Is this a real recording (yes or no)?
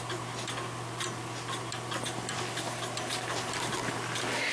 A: yes